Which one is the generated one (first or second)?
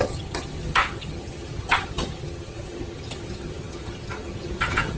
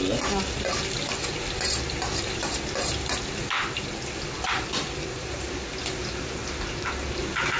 first